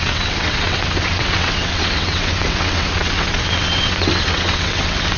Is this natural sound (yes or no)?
no